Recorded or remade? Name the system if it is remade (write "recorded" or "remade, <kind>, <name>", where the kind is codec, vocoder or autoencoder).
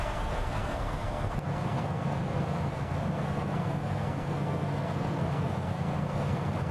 remade, codec, SNAC